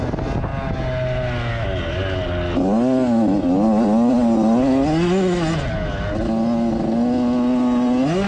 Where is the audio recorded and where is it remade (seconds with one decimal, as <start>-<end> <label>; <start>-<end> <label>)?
0.0-8.3 recorded